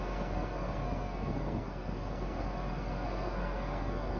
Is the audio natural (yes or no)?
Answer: no